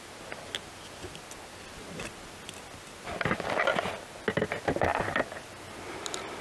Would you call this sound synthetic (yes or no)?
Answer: no